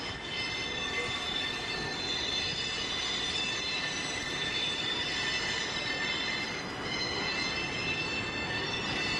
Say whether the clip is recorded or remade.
recorded